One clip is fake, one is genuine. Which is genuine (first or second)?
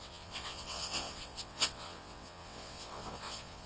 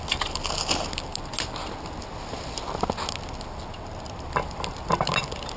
second